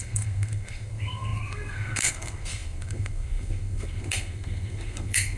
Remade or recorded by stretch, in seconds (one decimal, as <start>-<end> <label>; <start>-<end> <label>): 0.0-5.4 remade